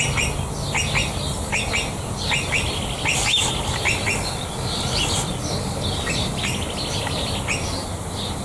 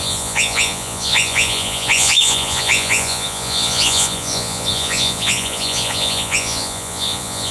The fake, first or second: second